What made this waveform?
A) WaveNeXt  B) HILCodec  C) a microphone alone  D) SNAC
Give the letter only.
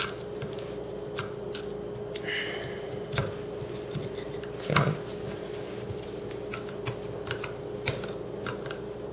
C